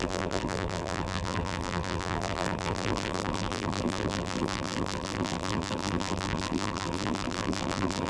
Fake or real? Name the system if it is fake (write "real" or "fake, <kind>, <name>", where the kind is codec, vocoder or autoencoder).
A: fake, vocoder, BigVGAN v2